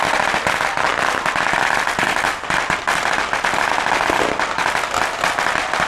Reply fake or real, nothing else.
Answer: real